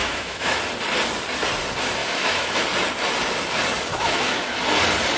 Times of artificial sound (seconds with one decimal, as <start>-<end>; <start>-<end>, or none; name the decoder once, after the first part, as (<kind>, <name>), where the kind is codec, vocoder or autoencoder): 0.0-0.6 (autoencoder, DAC-VAE); 2.0-2.6; 3.9-4.5